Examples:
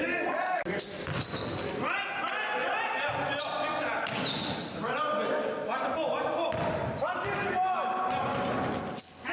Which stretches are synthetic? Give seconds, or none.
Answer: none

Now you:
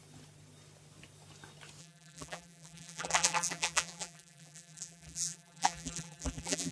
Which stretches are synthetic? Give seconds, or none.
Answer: 1.8-6.7 (vocoder, BigVGAN v2)

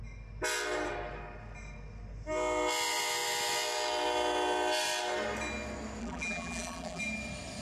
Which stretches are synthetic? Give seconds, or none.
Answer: 6.0-7.0 (vocoder, BigVGAN v2)

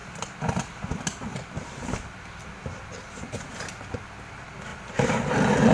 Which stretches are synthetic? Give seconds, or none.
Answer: 4.7-5.3 (vocoder, BigVGAN v2)

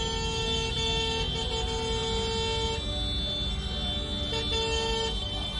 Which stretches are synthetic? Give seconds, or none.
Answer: none

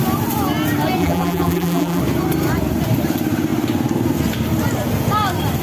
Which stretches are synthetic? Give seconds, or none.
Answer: 1.0-2.0 (vocoder, BigVGAN v2)